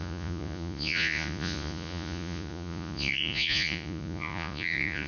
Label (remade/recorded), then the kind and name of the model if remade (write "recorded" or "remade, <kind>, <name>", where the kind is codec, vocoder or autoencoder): remade, vocoder, Vocos